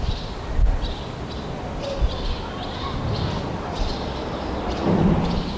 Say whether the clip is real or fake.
real